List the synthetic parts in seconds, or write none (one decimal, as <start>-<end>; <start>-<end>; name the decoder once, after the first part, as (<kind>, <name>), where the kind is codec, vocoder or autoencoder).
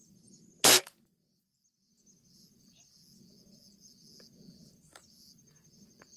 none